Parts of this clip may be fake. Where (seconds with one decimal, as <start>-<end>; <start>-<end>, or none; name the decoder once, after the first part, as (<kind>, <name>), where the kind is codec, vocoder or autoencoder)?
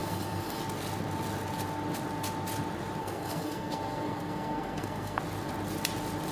0.0-0.6 (codec, SNAC); 3.0-5.2